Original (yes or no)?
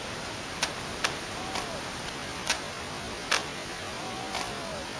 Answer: yes